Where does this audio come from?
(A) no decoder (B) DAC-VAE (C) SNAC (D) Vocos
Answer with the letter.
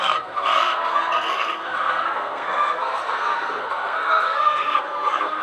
C